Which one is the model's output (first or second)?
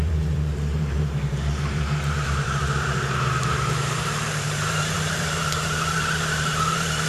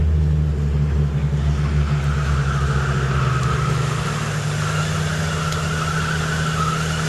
first